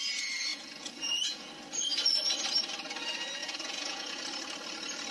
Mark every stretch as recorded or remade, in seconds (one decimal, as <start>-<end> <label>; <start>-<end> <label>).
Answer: 0.0-0.5 recorded; 0.5-1.5 remade; 1.5-3.4 recorded; 3.4-4.2 remade; 4.2-5.1 recorded